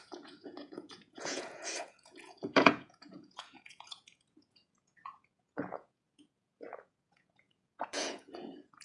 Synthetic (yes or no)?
yes